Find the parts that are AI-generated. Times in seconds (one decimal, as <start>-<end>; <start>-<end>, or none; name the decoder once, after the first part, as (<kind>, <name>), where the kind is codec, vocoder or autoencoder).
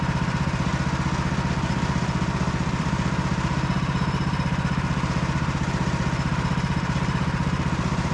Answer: 0.0-0.7 (vocoder, BigVGAN v2); 1.5-8.1